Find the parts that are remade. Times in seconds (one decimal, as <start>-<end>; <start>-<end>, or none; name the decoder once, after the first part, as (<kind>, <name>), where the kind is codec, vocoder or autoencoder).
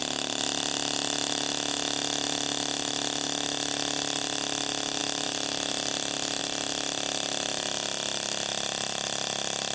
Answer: none